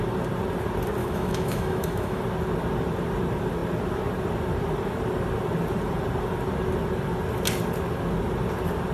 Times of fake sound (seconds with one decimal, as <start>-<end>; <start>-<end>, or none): 1.0-2.2